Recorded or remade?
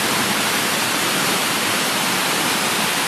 recorded